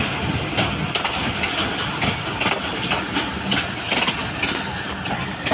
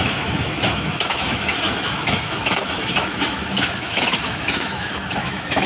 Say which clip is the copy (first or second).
second